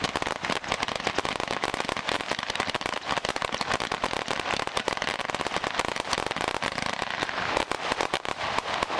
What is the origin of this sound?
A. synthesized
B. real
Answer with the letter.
B